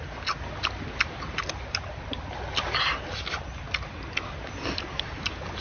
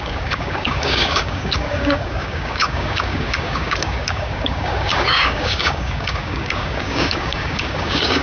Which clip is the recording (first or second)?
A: first